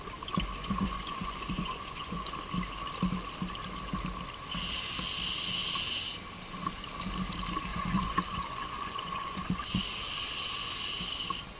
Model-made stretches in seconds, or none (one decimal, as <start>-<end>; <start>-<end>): 0.6-2.3; 7.7-9.8